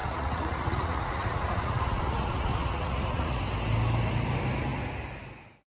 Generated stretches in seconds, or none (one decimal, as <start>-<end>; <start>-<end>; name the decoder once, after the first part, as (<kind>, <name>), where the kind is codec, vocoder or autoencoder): 0.0-3.4 (vocoder, Vocos)